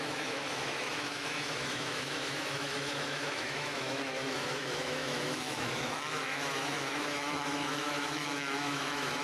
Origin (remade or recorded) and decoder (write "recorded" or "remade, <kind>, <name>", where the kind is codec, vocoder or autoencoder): remade, autoencoder, DAC-VAE